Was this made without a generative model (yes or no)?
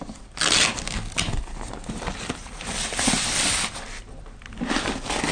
yes